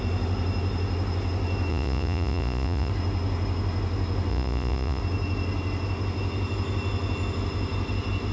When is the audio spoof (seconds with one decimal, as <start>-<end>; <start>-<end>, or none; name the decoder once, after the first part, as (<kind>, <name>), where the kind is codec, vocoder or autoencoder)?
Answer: 1.7-2.9 (vocoder, Vocos); 4.3-5.0